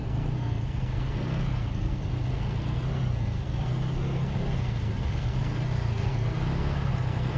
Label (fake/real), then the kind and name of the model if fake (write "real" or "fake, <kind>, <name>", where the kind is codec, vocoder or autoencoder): fake, codec, SNAC